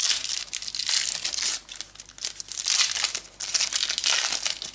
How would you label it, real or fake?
real